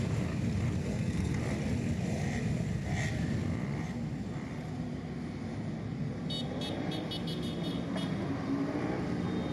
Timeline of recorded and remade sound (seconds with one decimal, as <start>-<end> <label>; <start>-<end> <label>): 0.0-0.8 recorded; 0.8-1.4 remade; 1.4-9.5 recorded